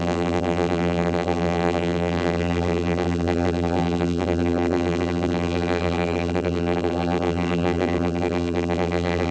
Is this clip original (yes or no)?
no